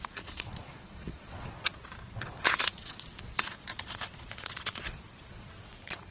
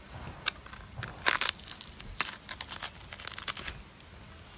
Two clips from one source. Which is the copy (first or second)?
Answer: first